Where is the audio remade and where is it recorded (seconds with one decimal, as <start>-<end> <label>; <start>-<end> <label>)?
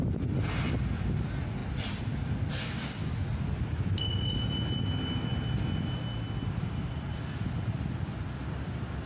0.0-9.1 recorded